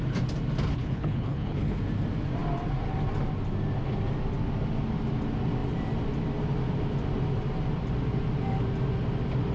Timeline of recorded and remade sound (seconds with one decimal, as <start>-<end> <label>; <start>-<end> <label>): 0.0-0.7 recorded; 0.7-1.8 remade; 1.8-9.5 recorded